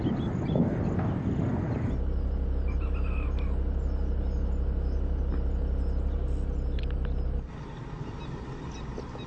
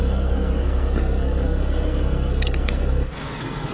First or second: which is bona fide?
first